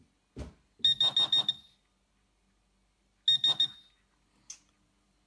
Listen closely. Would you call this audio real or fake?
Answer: real